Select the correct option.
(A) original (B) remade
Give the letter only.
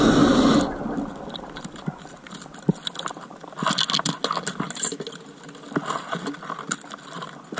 A